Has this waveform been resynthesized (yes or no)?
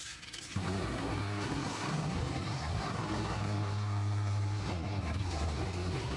yes